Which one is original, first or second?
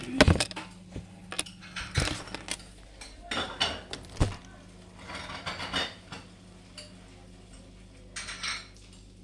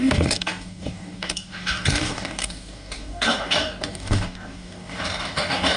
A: first